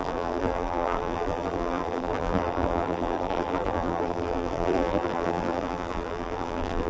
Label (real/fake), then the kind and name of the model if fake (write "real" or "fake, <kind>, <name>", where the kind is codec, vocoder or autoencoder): fake, vocoder, BigVGAN v2